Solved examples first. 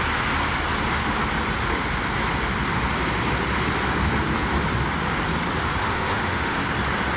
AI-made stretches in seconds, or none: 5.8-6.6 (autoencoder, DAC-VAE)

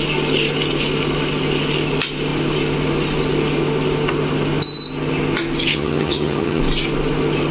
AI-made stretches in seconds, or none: 5.7-6.6 (vocoder, HiFi-GAN)

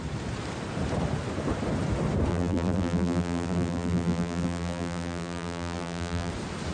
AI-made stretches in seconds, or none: 2.3-6.3 (vocoder, BigVGAN v2)